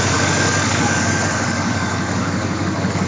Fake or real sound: fake